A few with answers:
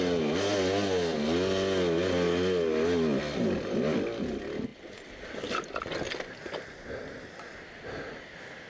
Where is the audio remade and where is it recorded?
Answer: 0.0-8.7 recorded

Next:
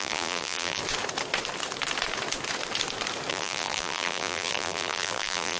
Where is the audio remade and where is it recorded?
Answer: 0.0-0.8 remade; 0.8-3.3 recorded; 3.3-5.6 remade

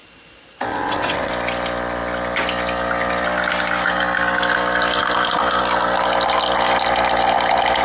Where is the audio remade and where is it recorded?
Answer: 0.0-0.7 recorded; 0.7-1.3 remade; 1.3-7.8 recorded

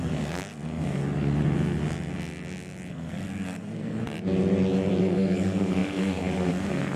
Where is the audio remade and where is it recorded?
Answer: 0.0-1.0 remade; 1.0-2.9 recorded; 2.9-4.0 remade; 4.0-5.0 recorded; 5.0-7.0 remade

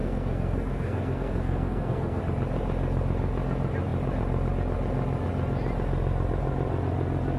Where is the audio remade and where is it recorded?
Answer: 0.0-2.2 remade; 2.2-7.4 recorded

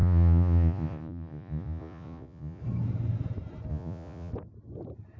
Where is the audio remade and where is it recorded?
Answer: 0.0-2.6 remade; 2.6-3.7 recorded; 3.7-4.3 remade; 4.3-5.2 recorded

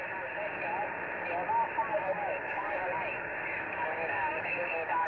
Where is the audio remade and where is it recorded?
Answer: 0.0-1.9 recorded; 1.9-5.1 remade